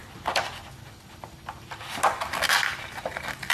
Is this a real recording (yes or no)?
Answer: yes